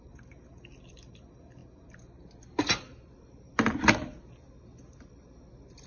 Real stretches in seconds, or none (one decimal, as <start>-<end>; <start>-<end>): 0.0-5.9